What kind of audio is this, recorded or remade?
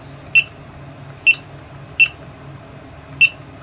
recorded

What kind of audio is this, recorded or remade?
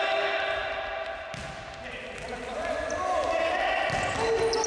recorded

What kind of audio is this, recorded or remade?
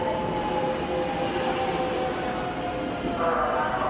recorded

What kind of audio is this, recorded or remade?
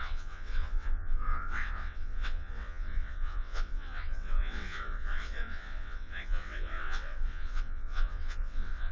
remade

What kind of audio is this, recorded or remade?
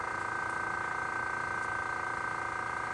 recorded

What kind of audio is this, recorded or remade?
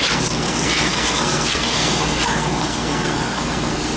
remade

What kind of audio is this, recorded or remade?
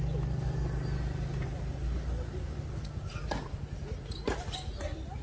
recorded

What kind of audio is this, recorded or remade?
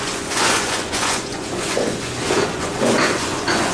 remade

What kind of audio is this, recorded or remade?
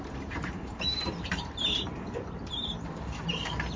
remade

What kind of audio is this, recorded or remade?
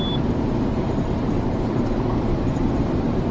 remade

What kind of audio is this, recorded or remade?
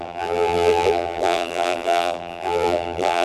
remade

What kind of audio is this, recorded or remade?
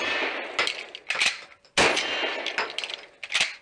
recorded